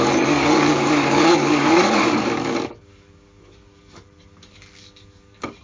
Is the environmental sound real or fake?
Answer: fake